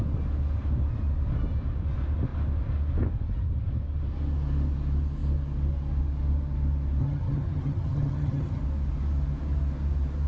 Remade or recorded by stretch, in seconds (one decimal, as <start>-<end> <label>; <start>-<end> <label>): 0.0-7.0 recorded; 7.0-8.6 remade; 8.6-10.3 recorded